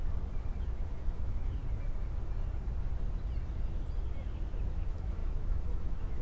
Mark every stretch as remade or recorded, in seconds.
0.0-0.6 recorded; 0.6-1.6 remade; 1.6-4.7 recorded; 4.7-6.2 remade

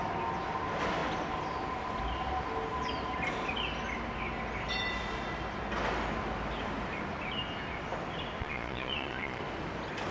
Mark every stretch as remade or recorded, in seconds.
0.0-8.4 recorded; 8.4-9.4 remade; 9.4-10.1 recorded